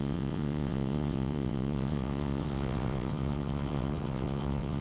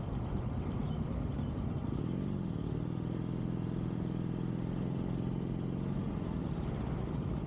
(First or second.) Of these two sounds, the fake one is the first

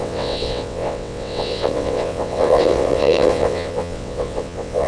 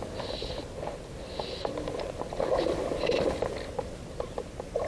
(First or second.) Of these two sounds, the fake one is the first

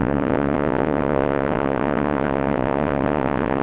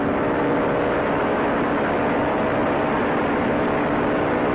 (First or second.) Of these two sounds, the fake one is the first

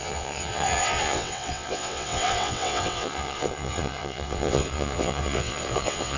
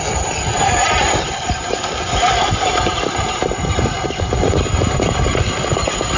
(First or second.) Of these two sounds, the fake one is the first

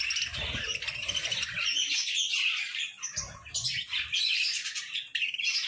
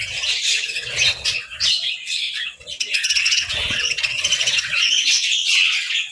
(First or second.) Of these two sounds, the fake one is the second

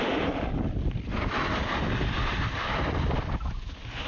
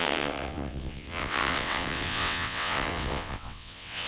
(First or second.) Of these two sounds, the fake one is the second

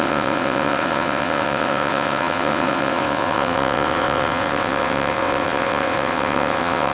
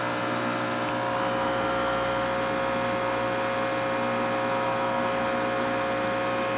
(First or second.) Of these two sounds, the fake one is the first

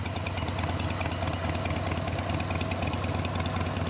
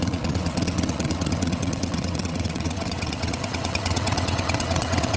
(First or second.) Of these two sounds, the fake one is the second